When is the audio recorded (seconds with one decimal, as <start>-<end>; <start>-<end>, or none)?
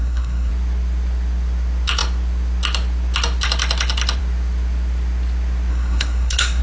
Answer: 0.5-5.7